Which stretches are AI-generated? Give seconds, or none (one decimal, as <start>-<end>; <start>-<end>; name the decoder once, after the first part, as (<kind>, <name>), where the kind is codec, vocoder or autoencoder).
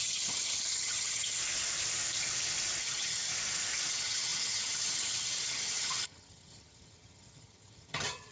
0.0-1.4 (vocoder, HiFi-GAN); 2.8-3.3; 3.9-8.3